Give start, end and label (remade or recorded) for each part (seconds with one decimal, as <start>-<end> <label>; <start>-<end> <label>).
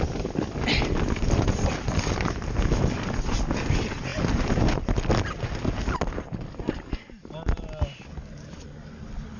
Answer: 0.0-9.4 recorded